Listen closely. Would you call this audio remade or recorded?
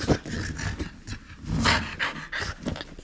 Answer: recorded